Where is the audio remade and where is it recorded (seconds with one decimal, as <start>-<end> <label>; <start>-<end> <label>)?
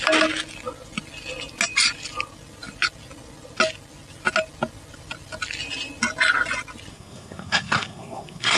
0.0-6.9 recorded; 6.9-8.6 remade